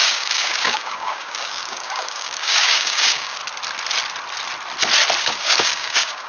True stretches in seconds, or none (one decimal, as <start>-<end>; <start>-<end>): 3.4-5.2